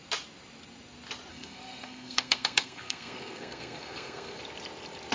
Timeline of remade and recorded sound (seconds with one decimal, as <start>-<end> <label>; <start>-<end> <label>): 0.0-1.3 recorded; 1.3-4.4 remade; 4.4-5.1 recorded